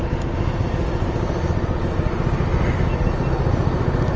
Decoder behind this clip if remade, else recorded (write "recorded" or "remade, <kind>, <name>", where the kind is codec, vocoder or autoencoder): recorded